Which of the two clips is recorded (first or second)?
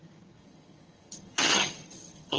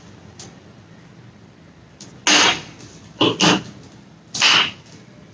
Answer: second